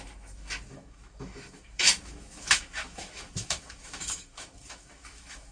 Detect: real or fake fake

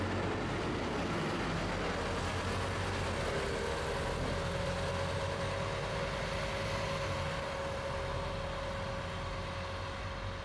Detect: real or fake real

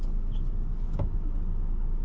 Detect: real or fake real